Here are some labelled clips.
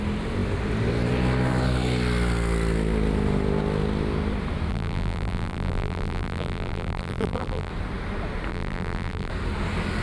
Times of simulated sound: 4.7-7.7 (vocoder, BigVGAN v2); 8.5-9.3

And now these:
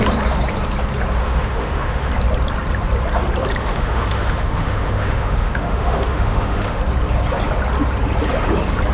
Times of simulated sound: 1.2-2.1 (autoencoder, DAC-VAE); 3.6-6.8

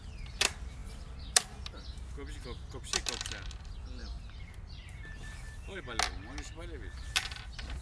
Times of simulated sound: 0.8-1.4 (vocoder, BigVGAN v2)

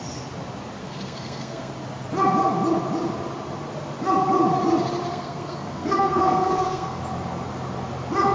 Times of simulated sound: 0.8-1.7 (codec, SNAC); 5.1-7.0

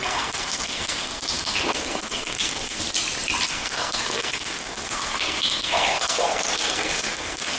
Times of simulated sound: 0.0-2.8 (codec, SNAC); 3.5-7.6

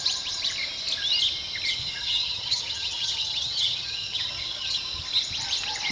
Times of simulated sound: 1.8-4.8 (vocoder, HiFi-GAN)

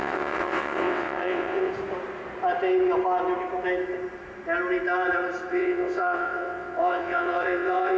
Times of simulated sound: 0.0-1.7 (vocoder, WaveNeXt); 5.5-8.0